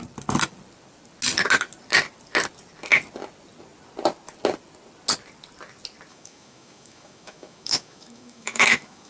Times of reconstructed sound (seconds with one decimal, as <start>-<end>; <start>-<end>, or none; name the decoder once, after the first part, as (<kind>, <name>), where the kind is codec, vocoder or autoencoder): 6.1-9.1 (autoencoder, DAC-VAE)